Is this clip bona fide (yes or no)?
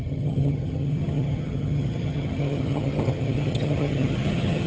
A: no